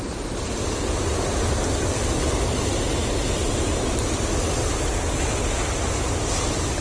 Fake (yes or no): no